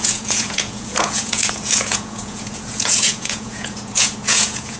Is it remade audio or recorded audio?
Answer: remade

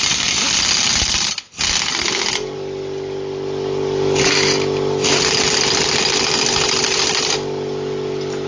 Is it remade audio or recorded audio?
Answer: recorded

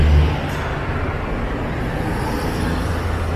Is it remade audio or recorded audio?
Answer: recorded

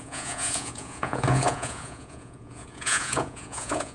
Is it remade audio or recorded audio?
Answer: remade